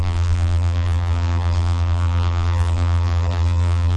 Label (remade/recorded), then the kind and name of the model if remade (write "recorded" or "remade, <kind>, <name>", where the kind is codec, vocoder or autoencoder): remade, vocoder, BigVGAN v2